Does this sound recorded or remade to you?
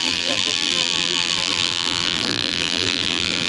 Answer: remade